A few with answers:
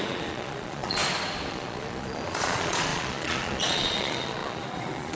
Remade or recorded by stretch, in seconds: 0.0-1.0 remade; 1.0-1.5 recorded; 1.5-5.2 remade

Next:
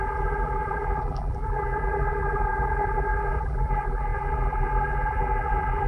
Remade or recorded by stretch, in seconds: 0.0-5.9 remade

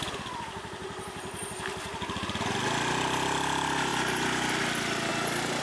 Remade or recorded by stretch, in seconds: 0.0-5.6 recorded

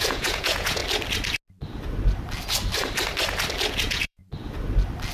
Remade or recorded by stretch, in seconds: 0.0-0.8 remade; 0.8-3.7 recorded; 3.7-4.2 remade; 4.2-5.1 recorded

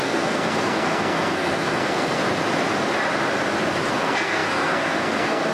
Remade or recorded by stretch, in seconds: 0.0-2.2 remade; 2.2-3.9 recorded; 3.9-5.5 remade